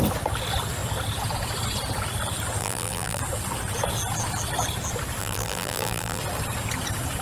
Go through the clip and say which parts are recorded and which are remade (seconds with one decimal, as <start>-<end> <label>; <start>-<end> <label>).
0.0-2.6 recorded; 2.6-3.2 remade; 3.2-5.2 recorded; 5.2-6.2 remade; 6.2-7.2 recorded